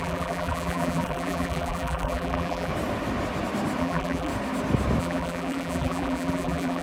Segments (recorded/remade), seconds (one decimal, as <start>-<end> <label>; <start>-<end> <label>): 0.0-2.7 remade; 2.7-3.8 recorded; 3.8-4.3 remade; 4.3-5.0 recorded; 5.0-6.8 remade